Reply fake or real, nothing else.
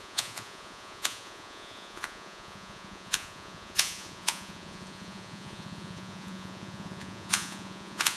fake